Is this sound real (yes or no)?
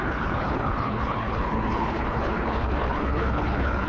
no